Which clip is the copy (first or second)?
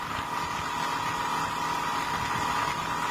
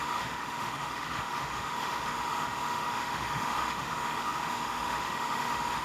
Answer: second